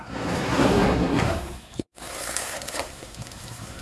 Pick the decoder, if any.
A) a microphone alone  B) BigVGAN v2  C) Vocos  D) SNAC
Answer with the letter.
D